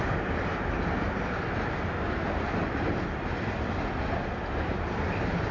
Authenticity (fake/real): real